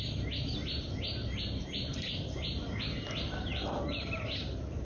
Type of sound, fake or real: fake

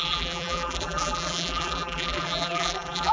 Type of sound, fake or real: fake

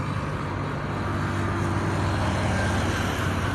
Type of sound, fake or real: real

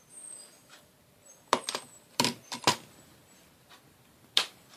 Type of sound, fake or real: real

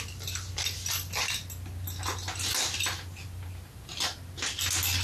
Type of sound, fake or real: real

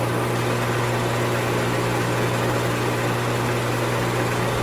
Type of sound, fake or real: real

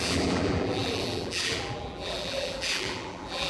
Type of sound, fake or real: fake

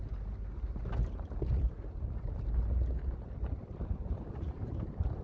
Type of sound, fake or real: real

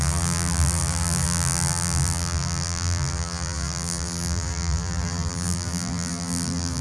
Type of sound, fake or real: fake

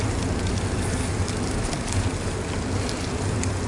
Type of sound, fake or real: real